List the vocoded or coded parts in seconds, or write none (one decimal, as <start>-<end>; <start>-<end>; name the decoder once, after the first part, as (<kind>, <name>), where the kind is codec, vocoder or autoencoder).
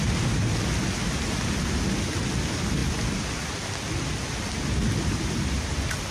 none